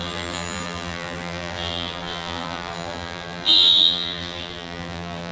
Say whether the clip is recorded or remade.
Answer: remade